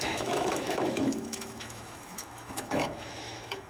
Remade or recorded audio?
remade